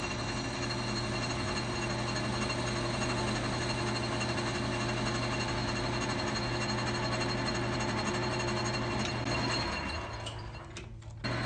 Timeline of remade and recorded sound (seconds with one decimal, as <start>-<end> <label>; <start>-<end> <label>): 0.0-11.5 recorded